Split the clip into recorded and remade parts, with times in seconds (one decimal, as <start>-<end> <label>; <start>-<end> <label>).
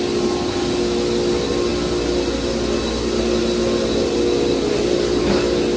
0.0-5.8 recorded